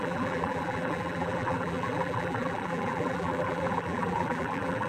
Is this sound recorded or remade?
remade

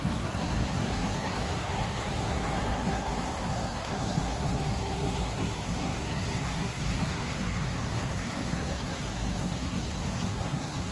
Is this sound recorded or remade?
remade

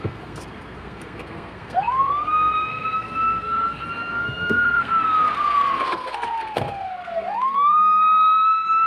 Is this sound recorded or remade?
remade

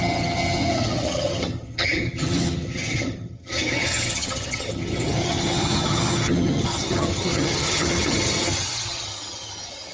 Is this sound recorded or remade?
remade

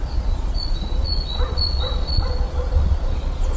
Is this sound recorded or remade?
remade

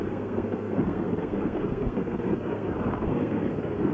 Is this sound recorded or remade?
remade